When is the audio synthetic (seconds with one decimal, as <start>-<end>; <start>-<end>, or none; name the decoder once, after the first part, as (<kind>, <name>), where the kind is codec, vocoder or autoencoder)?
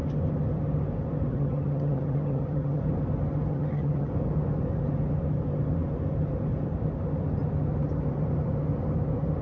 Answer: 1.3-2.8 (vocoder, HiFi-GAN); 3.5-4.1